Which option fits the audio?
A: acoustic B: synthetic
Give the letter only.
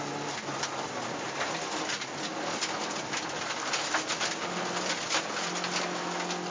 A